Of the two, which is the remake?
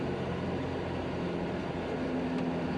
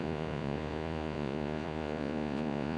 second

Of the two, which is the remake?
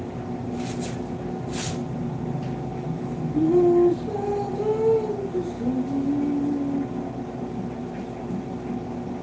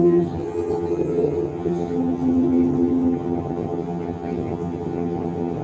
second